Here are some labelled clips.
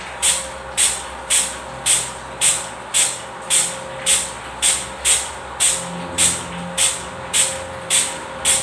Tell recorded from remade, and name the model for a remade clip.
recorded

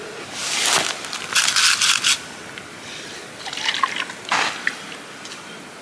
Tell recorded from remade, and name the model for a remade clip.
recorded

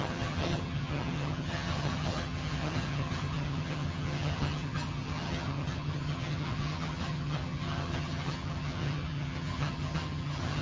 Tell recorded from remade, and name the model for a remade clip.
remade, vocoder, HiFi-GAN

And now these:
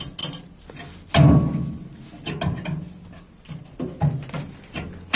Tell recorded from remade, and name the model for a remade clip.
recorded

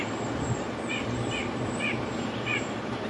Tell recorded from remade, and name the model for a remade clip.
remade, vocoder, BigVGAN v2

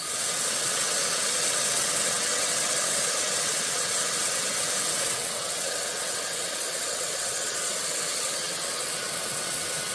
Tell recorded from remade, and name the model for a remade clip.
remade, vocoder, WaveNeXt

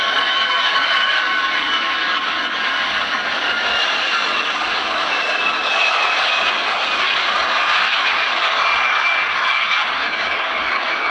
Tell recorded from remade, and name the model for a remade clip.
remade, codec, DAC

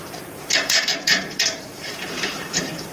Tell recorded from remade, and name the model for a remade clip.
remade, vocoder, BigVGAN v2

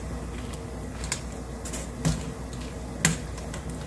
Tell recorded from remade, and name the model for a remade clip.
recorded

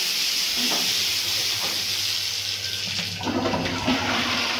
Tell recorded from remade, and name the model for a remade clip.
recorded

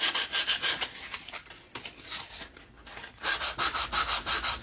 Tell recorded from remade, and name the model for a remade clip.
recorded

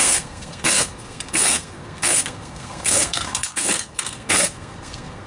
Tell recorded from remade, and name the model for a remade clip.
remade, codec, SNAC